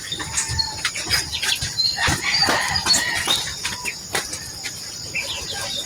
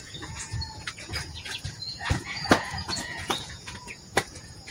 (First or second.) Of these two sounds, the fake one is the second